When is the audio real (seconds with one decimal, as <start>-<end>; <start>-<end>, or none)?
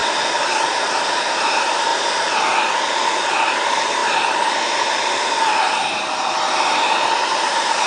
0.0-0.8; 1.9-3.3